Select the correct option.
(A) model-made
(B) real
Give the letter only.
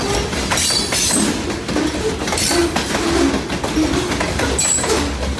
B